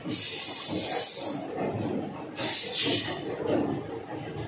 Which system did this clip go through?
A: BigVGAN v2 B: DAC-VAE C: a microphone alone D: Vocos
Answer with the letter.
C